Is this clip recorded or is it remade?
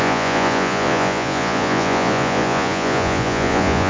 remade